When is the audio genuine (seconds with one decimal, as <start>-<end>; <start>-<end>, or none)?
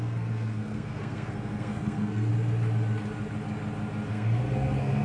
2.3-4.1